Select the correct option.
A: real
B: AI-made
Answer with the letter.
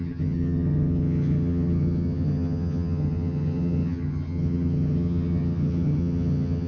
B